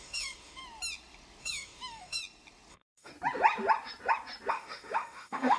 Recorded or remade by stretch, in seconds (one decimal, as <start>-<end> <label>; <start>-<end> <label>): 0.0-0.6 remade; 0.6-1.4 recorded; 1.4-2.2 remade; 2.2-2.7 recorded; 2.7-3.1 remade; 3.1-4.5 recorded; 4.5-5.6 remade